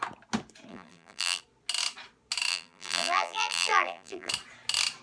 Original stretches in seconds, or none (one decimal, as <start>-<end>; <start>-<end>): 0.0-0.7; 1.4-2.5; 4.3-5.0